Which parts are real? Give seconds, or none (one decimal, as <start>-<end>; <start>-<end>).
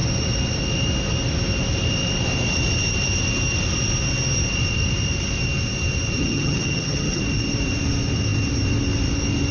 0.0-6.2; 7.2-9.5